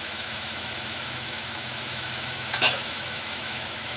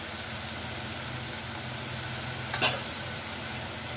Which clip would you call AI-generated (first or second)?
first